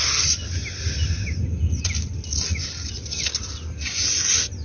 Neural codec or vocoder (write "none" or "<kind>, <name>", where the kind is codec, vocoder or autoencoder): none